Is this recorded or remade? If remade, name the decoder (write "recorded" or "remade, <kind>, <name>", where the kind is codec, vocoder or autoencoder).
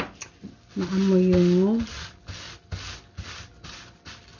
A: recorded